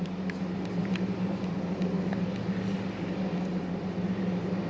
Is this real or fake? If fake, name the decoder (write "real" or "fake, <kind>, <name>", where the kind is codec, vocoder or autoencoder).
real